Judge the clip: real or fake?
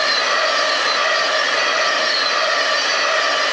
real